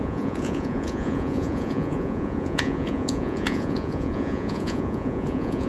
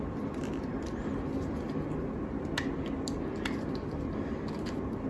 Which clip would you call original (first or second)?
second